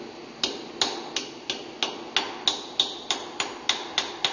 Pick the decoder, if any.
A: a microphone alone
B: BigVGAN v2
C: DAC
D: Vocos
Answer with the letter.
A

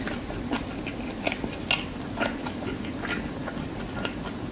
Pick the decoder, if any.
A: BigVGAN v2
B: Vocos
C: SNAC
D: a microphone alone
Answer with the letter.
D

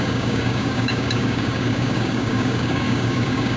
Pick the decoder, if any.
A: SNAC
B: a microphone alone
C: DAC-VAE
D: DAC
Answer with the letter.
D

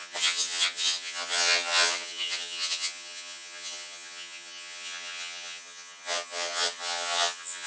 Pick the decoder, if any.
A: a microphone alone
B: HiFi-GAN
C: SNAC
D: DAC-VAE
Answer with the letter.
B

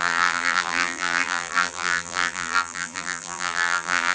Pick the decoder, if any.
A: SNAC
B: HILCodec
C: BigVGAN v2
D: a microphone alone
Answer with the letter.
C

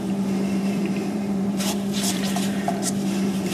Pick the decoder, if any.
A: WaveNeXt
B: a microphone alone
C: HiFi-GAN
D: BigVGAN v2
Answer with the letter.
D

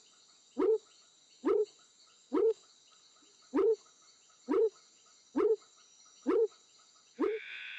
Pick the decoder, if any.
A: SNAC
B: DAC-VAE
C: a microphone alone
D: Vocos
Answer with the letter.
D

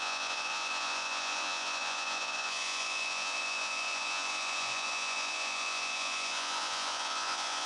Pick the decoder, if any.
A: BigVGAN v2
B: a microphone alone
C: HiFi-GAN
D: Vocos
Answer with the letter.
D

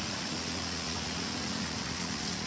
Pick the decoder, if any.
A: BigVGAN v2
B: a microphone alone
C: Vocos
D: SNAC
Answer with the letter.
C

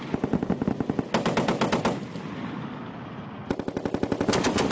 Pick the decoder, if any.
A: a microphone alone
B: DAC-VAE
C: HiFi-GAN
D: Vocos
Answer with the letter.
A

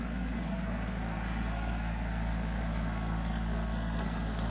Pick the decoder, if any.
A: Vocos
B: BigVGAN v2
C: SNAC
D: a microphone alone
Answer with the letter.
C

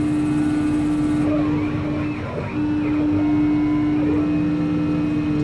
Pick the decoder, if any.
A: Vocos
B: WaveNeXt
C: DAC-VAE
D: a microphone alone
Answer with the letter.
D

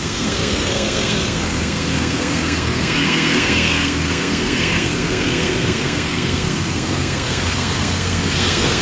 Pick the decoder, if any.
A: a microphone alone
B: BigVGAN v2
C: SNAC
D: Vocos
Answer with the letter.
C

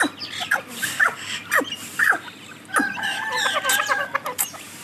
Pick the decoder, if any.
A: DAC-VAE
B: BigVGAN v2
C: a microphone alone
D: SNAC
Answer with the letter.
C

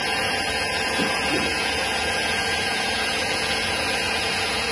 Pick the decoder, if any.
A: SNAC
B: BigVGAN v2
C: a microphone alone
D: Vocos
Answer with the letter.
D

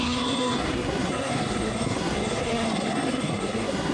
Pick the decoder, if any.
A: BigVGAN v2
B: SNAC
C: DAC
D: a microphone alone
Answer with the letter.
B